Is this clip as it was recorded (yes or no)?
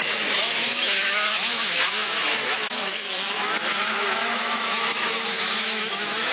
no